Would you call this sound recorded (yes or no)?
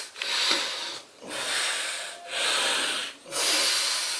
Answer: yes